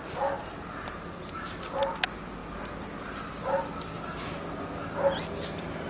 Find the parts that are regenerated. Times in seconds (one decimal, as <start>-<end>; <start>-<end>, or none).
none